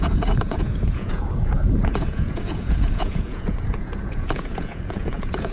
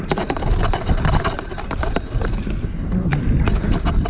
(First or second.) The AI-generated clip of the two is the first